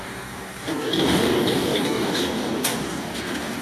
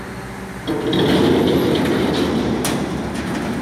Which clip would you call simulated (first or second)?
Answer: first